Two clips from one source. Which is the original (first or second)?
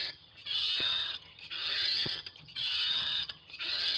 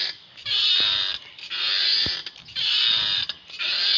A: second